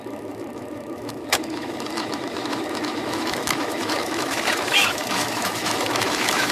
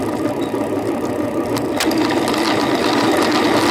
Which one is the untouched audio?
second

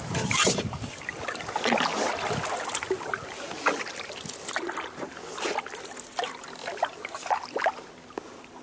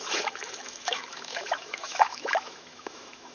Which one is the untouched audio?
first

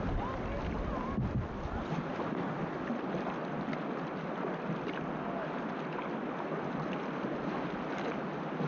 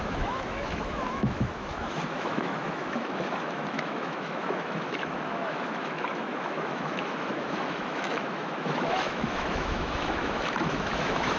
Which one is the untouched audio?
first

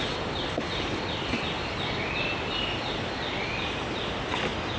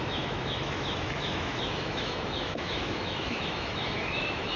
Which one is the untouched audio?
first